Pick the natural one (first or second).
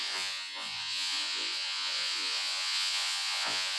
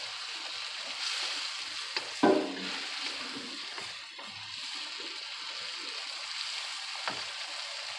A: second